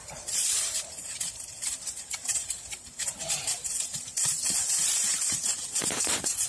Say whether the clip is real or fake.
fake